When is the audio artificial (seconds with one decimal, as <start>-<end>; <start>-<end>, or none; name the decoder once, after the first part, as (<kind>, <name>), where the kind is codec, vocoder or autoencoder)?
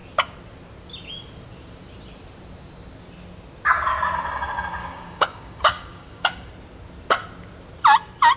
4.8-6.5 (codec, DAC)